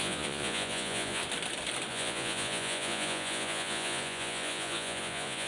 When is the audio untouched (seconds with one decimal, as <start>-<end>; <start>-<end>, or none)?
1.2-1.9